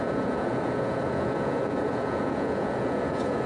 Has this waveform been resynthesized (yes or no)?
yes